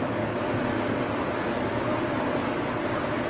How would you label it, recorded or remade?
recorded